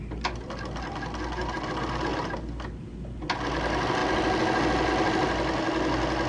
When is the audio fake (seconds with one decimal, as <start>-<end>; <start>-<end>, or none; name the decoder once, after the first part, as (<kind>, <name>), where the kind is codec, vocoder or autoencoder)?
none

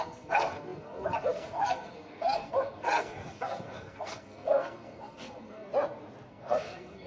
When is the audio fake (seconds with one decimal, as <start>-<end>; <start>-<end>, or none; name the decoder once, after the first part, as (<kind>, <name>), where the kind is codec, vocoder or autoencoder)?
0.0-5.7 (codec, SNAC); 6.3-7.1

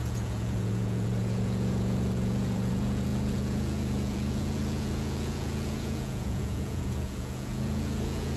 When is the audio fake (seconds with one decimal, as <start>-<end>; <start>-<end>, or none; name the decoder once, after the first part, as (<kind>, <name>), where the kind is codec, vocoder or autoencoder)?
0.0-8.4 (vocoder, Vocos)

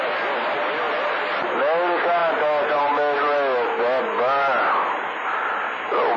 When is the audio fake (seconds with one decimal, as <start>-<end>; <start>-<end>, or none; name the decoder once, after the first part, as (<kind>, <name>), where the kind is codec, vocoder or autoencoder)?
none

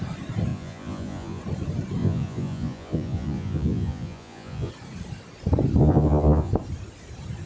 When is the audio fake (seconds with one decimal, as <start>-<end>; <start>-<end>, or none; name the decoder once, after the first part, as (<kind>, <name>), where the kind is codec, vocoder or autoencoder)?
0.5-1.4 (vocoder, Vocos); 2.0-4.7; 5.8-6.5

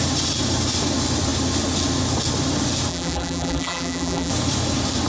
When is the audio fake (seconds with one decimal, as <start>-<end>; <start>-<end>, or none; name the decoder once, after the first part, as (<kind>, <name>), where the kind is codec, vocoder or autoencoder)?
2.9-4.3 (vocoder, BigVGAN v2)